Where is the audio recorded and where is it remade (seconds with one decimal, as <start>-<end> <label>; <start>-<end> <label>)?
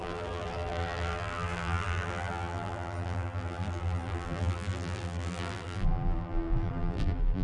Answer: 0.0-7.4 remade